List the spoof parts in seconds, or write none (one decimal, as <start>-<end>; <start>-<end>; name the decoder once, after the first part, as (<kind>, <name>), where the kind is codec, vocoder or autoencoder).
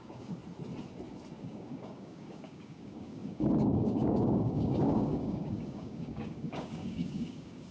0.0-0.4 (codec, DAC); 1.4-7.7